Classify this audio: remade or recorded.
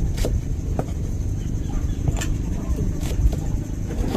remade